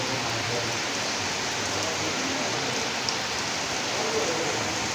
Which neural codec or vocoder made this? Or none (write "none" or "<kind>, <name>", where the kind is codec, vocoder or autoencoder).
none